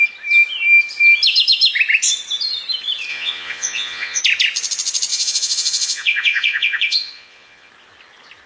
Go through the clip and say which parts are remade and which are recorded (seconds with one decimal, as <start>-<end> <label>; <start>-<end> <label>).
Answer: 0.0-3.1 recorded; 3.1-4.2 remade; 4.2-5.1 recorded; 5.1-7.7 remade; 7.7-8.5 recorded